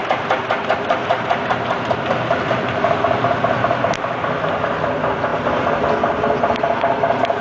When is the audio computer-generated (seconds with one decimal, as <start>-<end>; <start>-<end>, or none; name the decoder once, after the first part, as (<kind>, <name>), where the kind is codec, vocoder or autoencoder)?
none